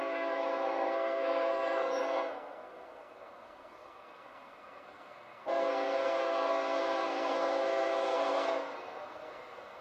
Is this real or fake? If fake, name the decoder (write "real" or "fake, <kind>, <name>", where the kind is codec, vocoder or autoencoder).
fake, codec, SNAC